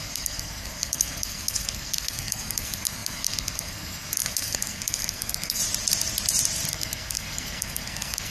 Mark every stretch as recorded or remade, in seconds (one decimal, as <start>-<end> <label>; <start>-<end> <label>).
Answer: 0.0-5.6 remade; 5.6-6.7 recorded; 6.7-8.3 remade